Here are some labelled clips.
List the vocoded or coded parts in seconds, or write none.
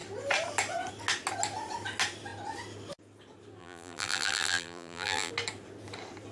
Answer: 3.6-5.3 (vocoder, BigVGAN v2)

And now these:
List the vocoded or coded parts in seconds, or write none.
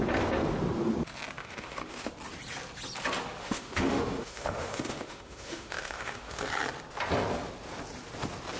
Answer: 1.4-2.1 (autoencoder, DAC-VAE); 3.4-6.5